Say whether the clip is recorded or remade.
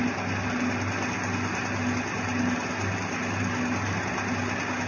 recorded